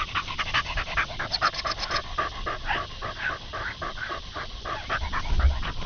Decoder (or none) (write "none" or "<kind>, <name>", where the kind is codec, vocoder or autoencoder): none